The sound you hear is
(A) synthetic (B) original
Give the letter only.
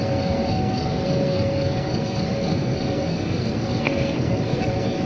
A